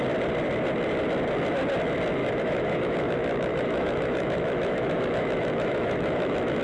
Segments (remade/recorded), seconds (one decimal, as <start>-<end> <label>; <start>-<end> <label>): 0.0-2.2 recorded; 2.2-6.6 remade